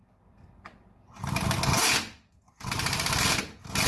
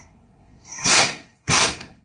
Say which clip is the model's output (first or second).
second